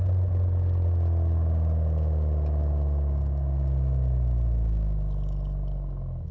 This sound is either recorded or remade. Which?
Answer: recorded